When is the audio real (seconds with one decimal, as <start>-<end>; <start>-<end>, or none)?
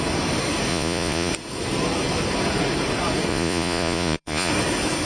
0.0-0.7; 1.3-3.3; 4.5-5.0